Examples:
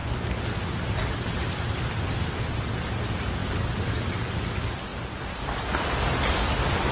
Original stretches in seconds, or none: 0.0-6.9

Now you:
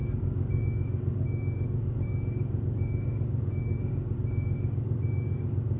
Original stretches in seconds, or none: none

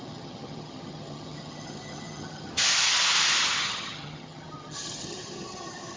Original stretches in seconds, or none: 2.5-3.6

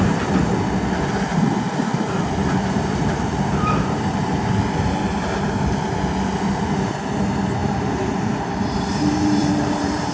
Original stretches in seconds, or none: 0.0-2.4; 5.8-7.6

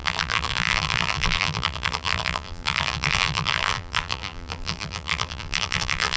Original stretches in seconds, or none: none

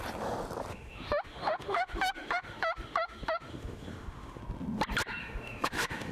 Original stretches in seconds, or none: 0.0-0.7; 4.4-5.2

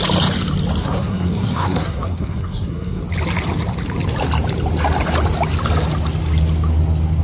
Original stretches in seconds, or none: 0.0-0.8; 3.0-7.2

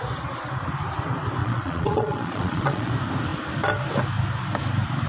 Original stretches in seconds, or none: 0.0-1.4; 2.9-5.1